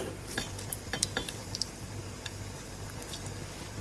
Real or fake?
fake